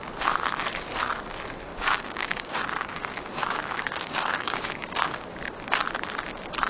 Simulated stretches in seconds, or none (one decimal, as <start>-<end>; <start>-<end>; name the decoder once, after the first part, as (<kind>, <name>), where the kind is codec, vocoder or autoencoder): 1.7-5.4 (codec, DAC)